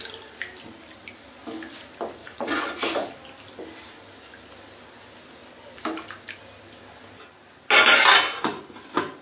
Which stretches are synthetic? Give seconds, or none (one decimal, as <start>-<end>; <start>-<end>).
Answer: 2.2-3.1